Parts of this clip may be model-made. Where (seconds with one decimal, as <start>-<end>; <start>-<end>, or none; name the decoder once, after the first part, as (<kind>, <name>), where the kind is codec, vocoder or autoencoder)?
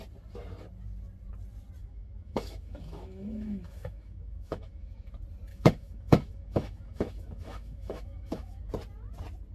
1.8-5.1 (autoencoder, DAC-VAE); 5.5-8.7